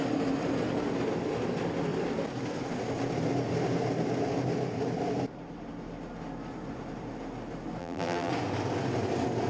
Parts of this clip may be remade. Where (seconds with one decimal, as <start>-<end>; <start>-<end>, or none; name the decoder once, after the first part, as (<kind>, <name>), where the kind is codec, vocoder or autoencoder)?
7.8-8.3 (vocoder, BigVGAN v2)